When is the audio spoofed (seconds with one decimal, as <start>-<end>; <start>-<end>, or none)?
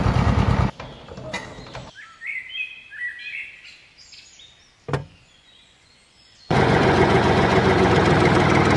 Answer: 5.0-7.9